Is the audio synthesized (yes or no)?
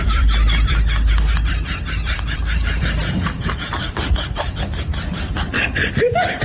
yes